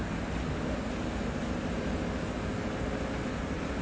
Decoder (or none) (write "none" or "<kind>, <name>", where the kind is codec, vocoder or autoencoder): none